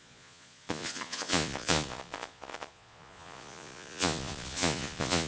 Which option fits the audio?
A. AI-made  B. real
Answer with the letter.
A